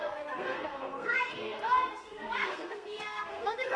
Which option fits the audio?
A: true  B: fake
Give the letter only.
B